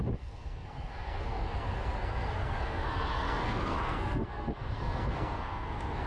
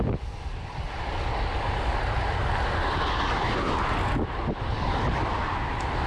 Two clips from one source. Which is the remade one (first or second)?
first